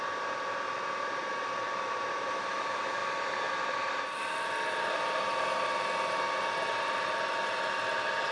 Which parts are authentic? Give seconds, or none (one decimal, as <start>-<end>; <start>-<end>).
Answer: 0.0-8.3